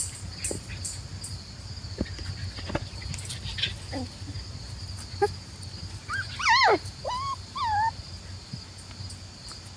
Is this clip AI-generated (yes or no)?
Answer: no